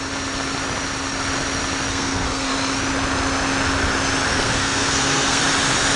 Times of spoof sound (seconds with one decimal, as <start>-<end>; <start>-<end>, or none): 1.9-2.5; 4.3-5.4